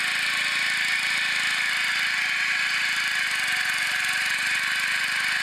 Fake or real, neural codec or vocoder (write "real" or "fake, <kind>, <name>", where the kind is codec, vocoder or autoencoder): real